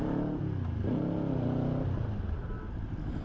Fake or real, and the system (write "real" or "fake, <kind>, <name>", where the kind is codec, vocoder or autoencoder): real